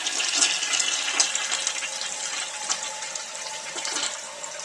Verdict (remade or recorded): recorded